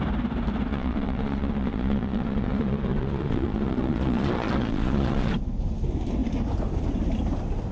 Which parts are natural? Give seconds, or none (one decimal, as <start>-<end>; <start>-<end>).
0.0-0.7; 5.3-7.7